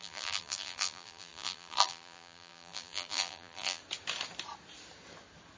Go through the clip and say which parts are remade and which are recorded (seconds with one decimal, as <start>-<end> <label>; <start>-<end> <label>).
0.0-3.8 remade; 3.8-5.6 recorded